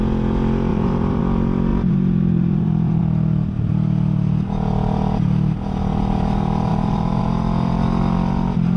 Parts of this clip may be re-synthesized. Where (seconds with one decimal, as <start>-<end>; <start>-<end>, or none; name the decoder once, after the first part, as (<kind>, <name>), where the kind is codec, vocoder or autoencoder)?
0.7-1.2 (vocoder, BigVGAN v2); 1.7-3.0; 6.7-7.2